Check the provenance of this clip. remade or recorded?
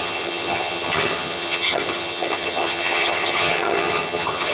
remade